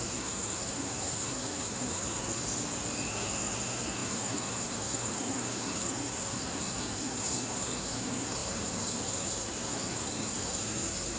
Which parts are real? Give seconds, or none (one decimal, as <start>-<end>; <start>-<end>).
2.4-3.1